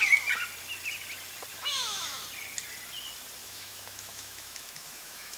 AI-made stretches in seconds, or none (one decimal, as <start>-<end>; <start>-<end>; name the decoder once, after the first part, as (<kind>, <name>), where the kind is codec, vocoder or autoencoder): 1.5-2.2 (autoencoder, DAC-VAE); 3.4-5.4